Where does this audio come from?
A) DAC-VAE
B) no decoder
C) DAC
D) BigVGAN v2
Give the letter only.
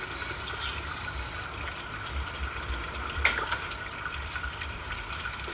D